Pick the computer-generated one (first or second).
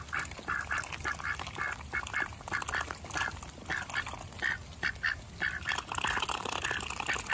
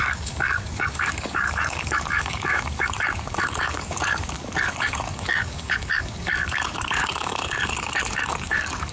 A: second